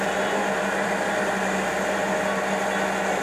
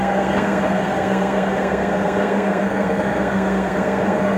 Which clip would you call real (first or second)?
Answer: first